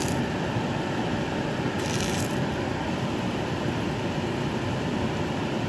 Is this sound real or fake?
fake